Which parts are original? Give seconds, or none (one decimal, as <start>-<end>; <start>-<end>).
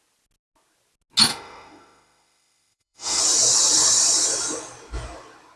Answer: 0.0-1.3; 3.2-5.6